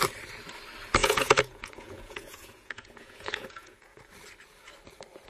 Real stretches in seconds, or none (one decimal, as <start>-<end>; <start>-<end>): 0.0-1.0; 4.0-5.3